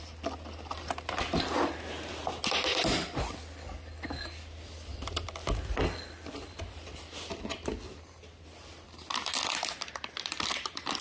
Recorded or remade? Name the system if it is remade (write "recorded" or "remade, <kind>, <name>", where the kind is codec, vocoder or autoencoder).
recorded